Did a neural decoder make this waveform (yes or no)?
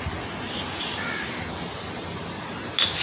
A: no